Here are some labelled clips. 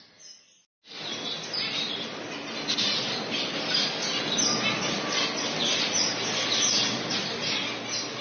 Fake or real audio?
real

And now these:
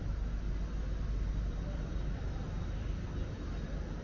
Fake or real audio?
real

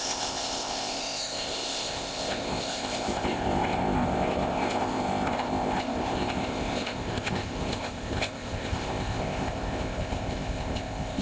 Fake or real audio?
fake